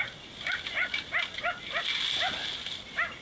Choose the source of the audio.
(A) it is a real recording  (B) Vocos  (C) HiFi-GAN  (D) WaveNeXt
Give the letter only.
A